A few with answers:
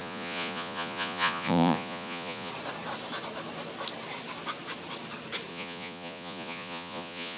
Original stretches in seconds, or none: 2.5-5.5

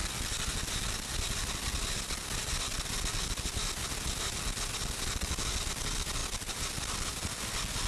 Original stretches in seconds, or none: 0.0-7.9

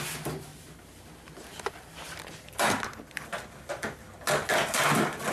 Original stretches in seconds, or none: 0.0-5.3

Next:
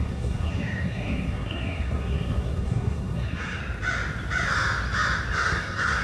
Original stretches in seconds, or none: 3.6-5.3

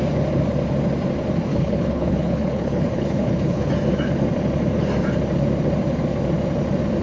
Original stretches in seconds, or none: 0.0-1.5; 3.7-7.0